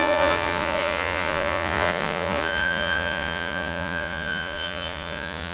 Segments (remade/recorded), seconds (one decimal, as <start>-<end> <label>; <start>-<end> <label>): 0.0-5.5 remade

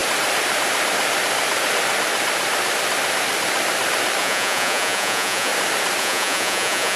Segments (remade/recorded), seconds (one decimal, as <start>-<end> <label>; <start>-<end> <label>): 0.0-4.2 recorded; 4.2-5.5 remade; 5.5-6.0 recorded; 6.0-7.0 remade